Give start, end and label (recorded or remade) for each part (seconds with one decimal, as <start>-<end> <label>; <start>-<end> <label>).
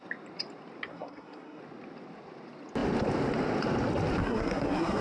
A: 0.0-0.9 recorded; 0.9-1.6 remade; 1.6-4.2 recorded; 4.2-5.0 remade